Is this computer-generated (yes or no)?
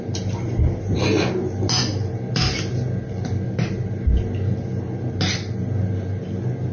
no